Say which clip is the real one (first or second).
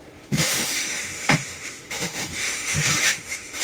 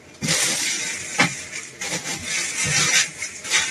second